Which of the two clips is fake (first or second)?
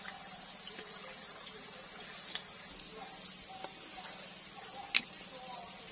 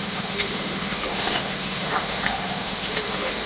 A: second